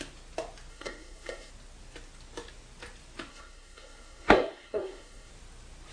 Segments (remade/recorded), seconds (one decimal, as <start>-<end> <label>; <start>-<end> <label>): 0.0-0.7 recorded; 0.7-1.5 remade; 1.5-3.3 recorded; 3.3-5.3 remade; 5.3-5.9 recorded